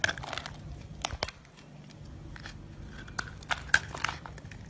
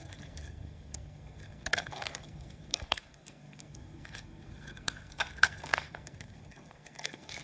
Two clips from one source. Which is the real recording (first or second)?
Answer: first